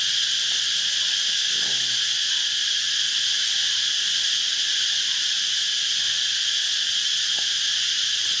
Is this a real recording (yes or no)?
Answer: yes